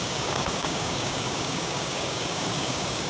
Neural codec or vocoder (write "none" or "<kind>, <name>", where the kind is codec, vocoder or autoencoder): codec, DAC